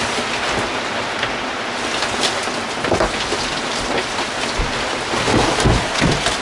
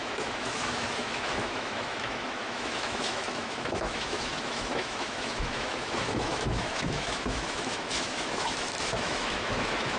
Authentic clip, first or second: first